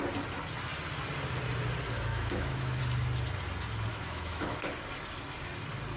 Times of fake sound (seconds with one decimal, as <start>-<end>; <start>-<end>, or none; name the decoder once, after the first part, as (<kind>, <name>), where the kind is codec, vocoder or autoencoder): 2.1-2.8 (autoencoder, DAC-VAE); 3.9-4.6